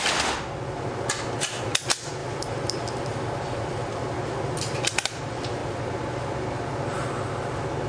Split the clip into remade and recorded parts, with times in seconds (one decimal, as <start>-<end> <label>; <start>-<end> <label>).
0.0-2.2 recorded; 2.2-4.6 remade; 4.6-7.9 recorded